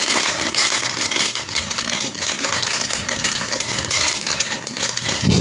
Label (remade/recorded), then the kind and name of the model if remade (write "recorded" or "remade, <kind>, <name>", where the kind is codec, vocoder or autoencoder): remade, codec, SNAC